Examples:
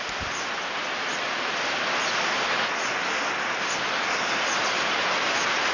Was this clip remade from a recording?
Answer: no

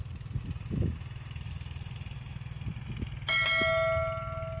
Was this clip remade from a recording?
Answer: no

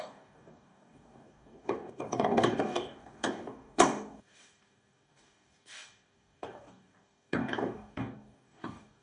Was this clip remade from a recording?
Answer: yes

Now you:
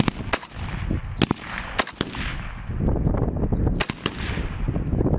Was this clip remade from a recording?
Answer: no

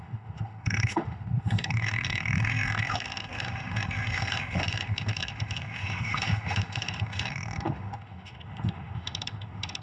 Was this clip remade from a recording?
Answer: yes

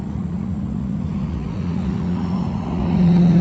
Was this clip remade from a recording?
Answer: yes